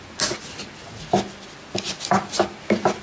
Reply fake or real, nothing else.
real